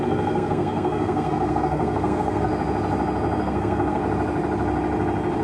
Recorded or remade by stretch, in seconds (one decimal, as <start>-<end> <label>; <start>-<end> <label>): 0.0-2.5 remade; 2.5-3.4 recorded; 3.4-4.0 remade; 4.0-5.4 recorded